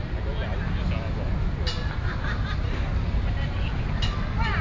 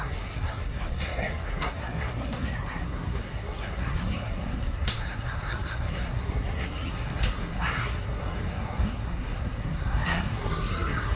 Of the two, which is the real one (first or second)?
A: first